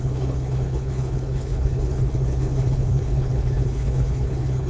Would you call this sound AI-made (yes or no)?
yes